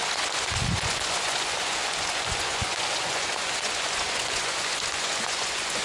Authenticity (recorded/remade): remade